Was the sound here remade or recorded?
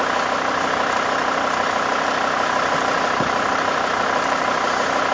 recorded